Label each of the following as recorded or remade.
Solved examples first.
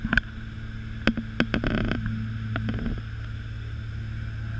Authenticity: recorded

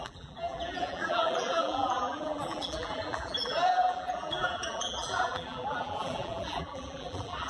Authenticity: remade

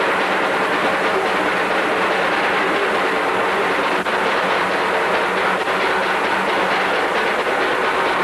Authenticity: remade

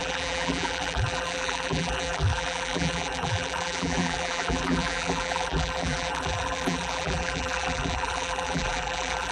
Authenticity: remade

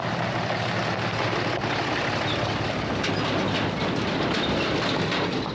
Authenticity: recorded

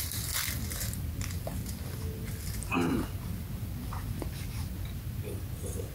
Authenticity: recorded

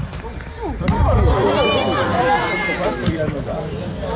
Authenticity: remade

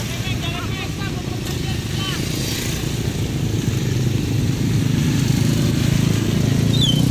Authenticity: recorded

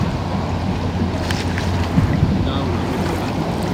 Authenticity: recorded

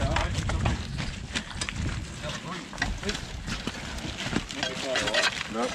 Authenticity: recorded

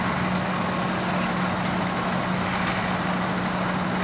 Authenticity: recorded